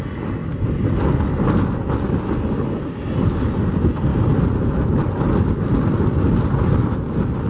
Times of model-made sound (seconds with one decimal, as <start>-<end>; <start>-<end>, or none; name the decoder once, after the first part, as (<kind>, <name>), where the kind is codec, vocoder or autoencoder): none